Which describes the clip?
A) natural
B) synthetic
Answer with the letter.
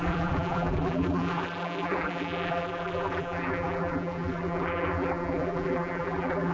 B